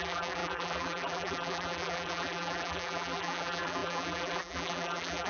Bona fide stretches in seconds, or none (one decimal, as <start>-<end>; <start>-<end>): none